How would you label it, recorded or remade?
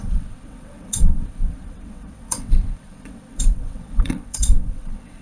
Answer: remade